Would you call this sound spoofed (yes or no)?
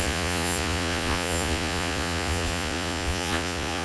yes